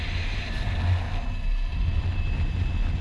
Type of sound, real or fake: real